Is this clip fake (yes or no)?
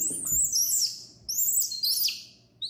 no